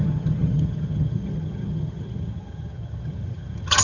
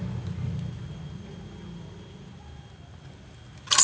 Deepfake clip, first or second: first